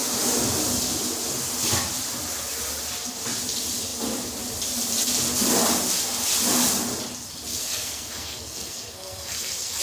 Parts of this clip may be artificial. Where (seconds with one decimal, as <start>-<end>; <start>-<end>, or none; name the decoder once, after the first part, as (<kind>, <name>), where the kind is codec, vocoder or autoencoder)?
7.5-9.8 (codec, SNAC)